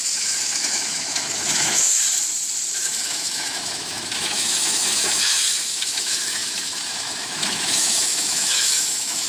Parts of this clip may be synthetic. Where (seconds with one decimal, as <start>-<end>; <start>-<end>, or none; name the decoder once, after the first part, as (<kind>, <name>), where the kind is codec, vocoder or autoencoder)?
0.0-2.0 (autoencoder, DAC-VAE); 2.7-9.3